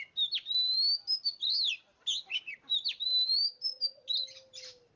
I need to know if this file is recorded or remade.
recorded